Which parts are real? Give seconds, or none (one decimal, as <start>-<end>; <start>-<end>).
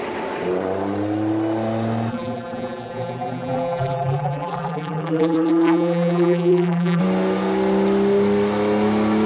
0.0-2.1; 7.0-9.3